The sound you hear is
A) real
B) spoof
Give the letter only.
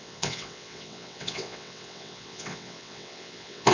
B